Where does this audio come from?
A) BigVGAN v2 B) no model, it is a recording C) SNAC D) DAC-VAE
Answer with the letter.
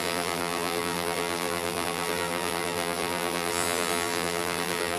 A